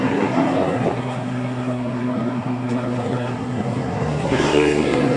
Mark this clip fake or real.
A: fake